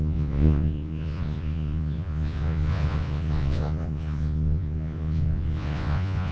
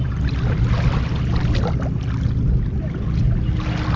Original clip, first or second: second